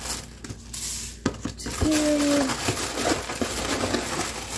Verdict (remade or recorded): recorded